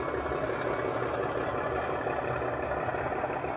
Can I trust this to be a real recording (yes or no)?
yes